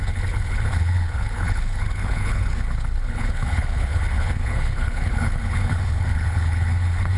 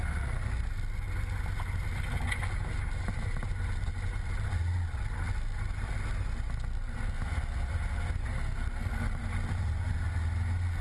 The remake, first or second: first